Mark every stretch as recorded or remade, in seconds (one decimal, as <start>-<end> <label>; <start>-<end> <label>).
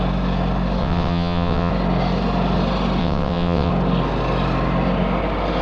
0.0-0.8 recorded; 0.8-1.7 remade; 1.7-3.0 recorded; 3.0-3.7 remade; 3.7-5.6 recorded